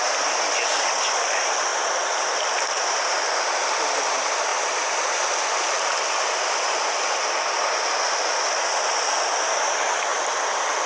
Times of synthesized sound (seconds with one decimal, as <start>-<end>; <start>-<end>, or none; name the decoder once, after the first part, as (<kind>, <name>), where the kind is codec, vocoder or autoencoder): none

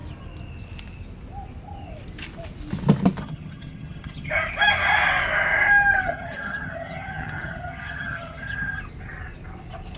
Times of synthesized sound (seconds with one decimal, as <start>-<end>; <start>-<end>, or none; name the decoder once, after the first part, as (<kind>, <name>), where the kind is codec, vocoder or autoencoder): 3.2-4.3 (vocoder, HiFi-GAN); 6.0-8.8